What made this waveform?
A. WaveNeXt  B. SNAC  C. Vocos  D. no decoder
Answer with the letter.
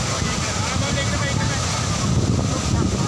D